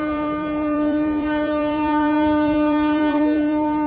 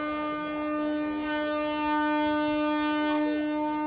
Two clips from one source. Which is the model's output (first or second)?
first